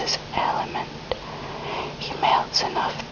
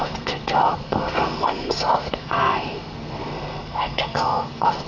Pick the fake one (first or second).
second